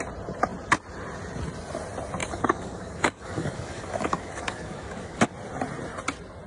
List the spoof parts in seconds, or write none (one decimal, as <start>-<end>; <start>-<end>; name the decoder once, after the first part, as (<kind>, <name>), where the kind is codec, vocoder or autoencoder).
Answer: 2.2-5.3 (codec, DAC)